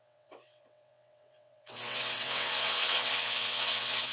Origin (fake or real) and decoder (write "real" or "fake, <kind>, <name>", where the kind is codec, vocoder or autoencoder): fake, vocoder, WaveNeXt